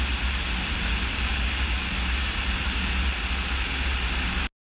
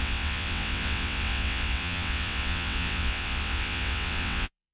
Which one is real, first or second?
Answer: first